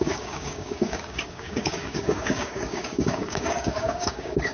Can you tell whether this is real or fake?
fake